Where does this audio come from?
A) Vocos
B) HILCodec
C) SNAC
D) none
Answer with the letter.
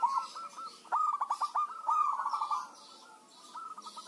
D